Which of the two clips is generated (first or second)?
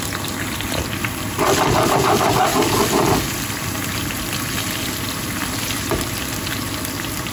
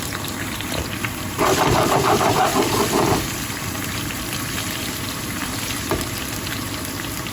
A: second